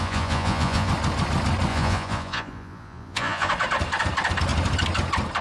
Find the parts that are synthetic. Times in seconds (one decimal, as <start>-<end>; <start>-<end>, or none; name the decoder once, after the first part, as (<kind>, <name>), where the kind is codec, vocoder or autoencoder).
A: 0.0-0.9 (vocoder, Vocos); 1.7-3.5